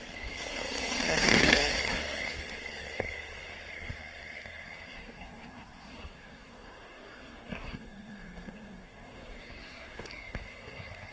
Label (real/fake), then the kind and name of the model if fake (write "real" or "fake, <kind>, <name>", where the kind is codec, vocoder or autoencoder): fake, codec, SNAC